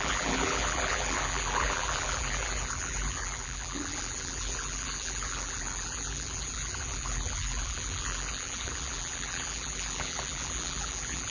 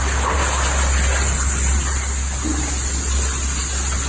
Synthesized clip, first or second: first